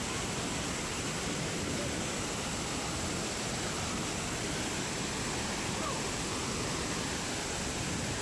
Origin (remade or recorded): recorded